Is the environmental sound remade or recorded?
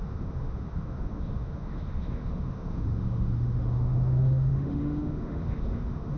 remade